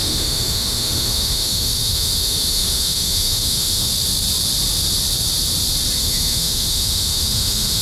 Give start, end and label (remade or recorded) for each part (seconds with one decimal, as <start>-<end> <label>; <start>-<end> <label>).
0.0-3.9 remade; 3.9-6.0 recorded; 6.0-7.8 remade